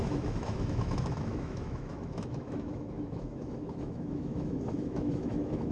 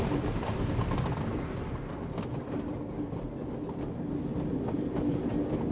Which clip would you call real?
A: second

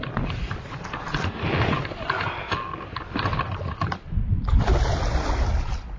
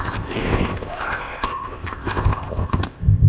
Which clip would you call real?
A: first